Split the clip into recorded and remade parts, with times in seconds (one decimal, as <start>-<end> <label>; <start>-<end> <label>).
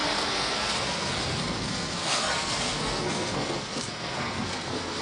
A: 0.0-5.0 remade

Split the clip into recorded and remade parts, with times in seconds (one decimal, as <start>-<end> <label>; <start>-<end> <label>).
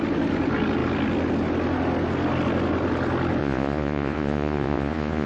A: 0.0-3.4 recorded; 3.4-5.3 remade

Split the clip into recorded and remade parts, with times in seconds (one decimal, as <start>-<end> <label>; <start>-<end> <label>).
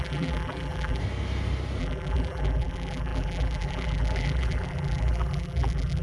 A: 0.0-1.0 remade; 1.0-1.8 recorded; 1.8-6.0 remade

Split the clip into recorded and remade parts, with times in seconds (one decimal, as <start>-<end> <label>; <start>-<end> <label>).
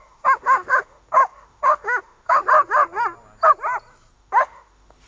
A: 0.0-2.4 remade; 2.4-4.1 recorded; 4.1-5.1 remade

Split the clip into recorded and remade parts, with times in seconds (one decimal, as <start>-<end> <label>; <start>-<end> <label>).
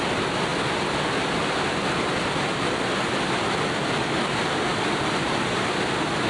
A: 0.0-6.3 recorded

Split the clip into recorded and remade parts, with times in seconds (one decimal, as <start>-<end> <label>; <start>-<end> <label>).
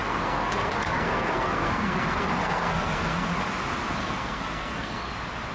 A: 0.0-3.3 remade; 3.3-4.0 recorded; 4.0-5.1 remade; 5.1-5.5 recorded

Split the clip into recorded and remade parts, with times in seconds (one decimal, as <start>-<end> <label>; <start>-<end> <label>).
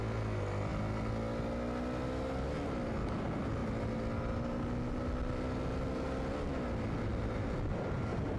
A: 0.0-8.4 recorded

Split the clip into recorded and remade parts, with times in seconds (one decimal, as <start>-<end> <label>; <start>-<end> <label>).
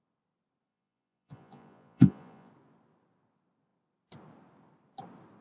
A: 0.0-0.7 recorded; 0.7-2.5 remade; 2.5-5.4 recorded